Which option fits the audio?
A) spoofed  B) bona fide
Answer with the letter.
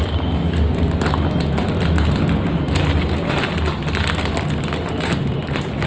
B